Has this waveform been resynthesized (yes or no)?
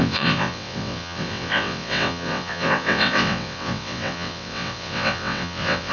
yes